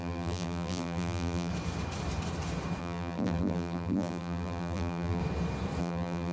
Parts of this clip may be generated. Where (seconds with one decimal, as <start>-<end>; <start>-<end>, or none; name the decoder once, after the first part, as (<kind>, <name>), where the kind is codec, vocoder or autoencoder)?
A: 0.0-1.5 (vocoder, BigVGAN v2); 2.8-5.2; 5.8-6.3